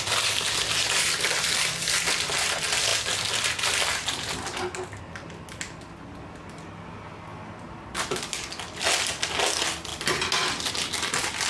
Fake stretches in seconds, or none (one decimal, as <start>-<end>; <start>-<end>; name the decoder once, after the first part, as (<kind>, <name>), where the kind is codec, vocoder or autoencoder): 9.9-10.7 (vocoder, BigVGAN v2)